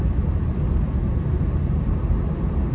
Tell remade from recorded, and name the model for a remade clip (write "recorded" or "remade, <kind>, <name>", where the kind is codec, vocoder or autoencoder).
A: recorded